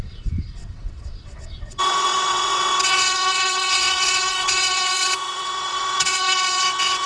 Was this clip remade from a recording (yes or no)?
yes